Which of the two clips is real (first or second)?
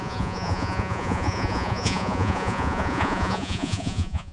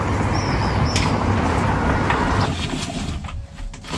second